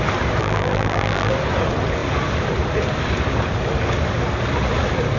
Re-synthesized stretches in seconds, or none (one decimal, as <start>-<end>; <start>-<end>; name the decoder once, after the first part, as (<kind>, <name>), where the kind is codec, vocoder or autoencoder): 0.4-1.3 (vocoder, BigVGAN v2)